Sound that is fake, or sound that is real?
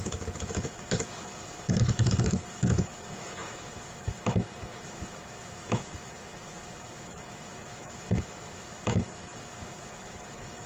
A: fake